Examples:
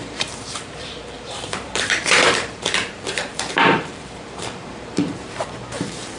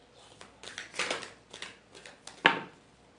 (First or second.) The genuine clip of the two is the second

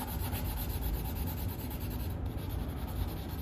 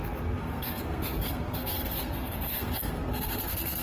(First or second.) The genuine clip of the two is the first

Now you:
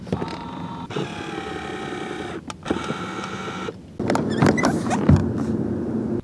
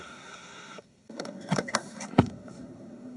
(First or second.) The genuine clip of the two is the first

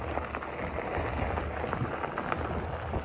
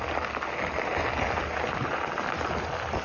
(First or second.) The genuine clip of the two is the first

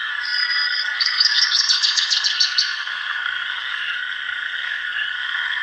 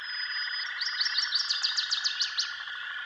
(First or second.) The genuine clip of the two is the second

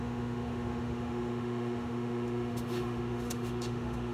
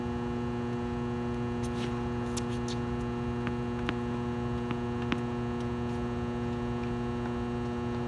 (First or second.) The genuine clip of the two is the second